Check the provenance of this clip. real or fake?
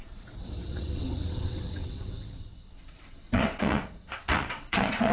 fake